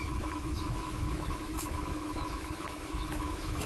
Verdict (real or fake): fake